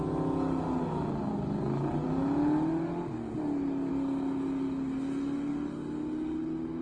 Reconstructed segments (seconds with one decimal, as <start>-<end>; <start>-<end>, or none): none